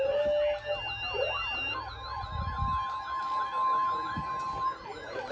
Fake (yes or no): no